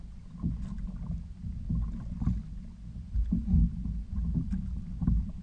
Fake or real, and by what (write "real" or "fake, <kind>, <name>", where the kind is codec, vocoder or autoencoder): real